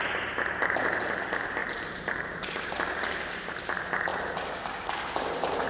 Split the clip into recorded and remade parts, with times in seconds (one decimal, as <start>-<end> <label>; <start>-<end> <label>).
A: 0.0-1.6 recorded; 1.6-3.6 remade; 3.6-5.7 recorded